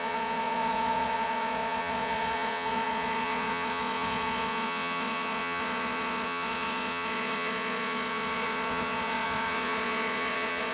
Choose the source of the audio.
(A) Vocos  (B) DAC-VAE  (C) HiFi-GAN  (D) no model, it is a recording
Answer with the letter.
A